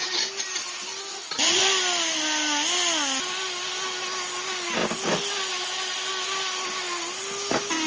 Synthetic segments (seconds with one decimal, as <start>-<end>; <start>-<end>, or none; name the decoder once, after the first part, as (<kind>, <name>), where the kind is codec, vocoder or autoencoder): 1.1-1.6 (vocoder, Vocos)